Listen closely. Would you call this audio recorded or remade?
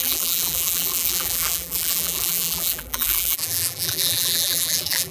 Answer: remade